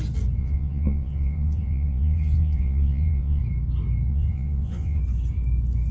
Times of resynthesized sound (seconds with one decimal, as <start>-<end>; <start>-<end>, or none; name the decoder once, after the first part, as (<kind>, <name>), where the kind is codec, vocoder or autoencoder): 0.4-3.4 (vocoder, Vocos); 4.1-5.0